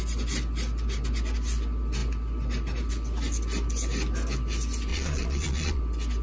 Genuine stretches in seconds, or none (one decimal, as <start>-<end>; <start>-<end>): 0.0-4.9; 5.8-6.2